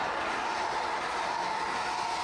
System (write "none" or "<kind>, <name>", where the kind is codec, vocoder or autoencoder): none